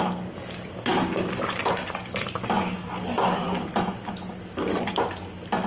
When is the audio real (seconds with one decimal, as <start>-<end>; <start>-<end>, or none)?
0.0-5.7